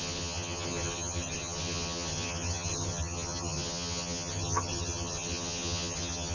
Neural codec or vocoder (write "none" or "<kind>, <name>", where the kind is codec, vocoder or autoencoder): vocoder, HiFi-GAN